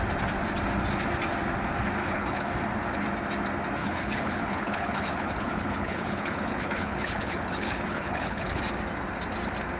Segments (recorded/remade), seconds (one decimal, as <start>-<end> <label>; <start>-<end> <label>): 0.0-2.0 recorded; 2.0-2.5 remade; 2.5-3.8 recorded; 3.8-8.6 remade; 8.6-9.8 recorded